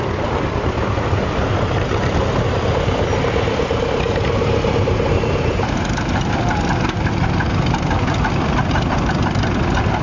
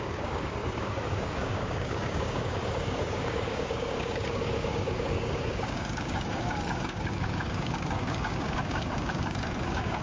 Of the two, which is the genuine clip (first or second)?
first